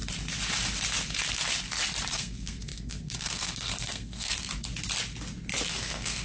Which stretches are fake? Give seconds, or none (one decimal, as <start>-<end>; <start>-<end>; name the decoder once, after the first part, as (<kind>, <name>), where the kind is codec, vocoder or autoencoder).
2.1-4.5 (codec, SNAC); 5.7-6.2